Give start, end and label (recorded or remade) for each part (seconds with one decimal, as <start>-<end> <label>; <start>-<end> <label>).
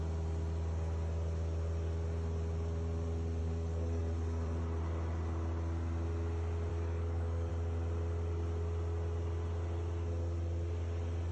0.0-3.4 recorded; 3.4-4.0 remade; 4.0-6.7 recorded; 6.7-7.5 remade; 7.5-11.3 recorded